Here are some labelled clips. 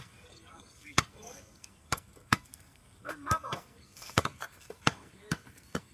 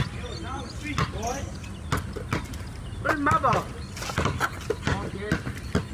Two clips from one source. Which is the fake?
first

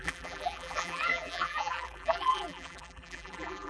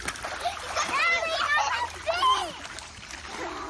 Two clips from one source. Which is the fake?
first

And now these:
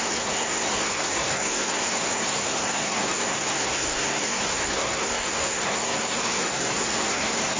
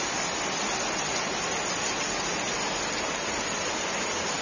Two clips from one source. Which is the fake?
first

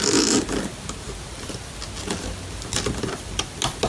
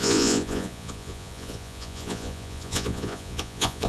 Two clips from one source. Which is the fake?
second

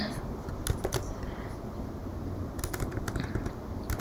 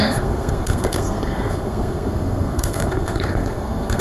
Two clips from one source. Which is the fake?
second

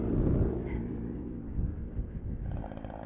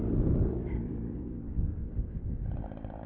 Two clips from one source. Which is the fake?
second